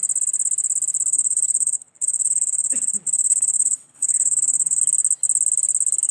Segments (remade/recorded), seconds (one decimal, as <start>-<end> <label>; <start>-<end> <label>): 0.0-1.1 recorded; 1.1-4.8 remade; 4.8-6.1 recorded